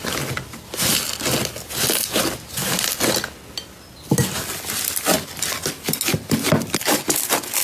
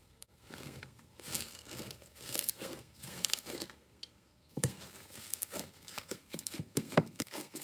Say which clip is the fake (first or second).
second